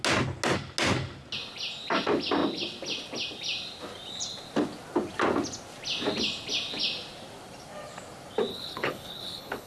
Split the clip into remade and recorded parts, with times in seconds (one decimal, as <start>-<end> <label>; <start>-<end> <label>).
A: 0.0-8.5 recorded; 8.5-9.7 remade